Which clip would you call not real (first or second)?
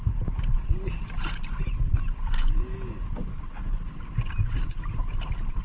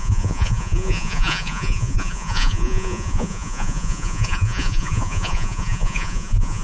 second